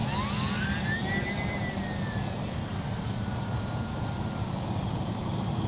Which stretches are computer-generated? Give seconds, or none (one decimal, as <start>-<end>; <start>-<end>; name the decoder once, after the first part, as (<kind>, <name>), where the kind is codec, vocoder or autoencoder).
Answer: 0.6-1.9 (vocoder, BigVGAN v2); 5.3-5.7